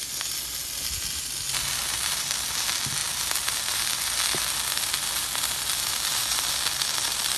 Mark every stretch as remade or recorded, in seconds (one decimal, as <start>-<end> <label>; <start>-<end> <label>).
0.0-7.4 recorded